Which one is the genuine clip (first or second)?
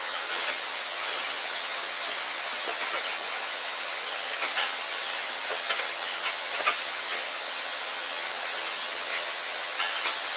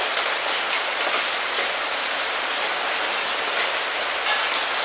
second